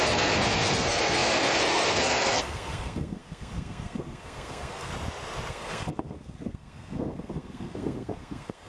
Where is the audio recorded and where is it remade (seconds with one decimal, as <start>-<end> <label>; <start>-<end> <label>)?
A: 0.0-4.9 remade; 4.9-5.5 recorded; 5.5-8.7 remade